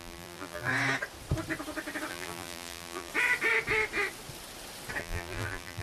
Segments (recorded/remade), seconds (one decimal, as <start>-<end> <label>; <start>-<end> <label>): 0.0-0.7 remade; 0.7-2.1 recorded; 2.1-3.1 remade; 3.1-5.0 recorded; 5.0-5.8 remade